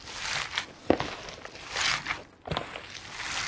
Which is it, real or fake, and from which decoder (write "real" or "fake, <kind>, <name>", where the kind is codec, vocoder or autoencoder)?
real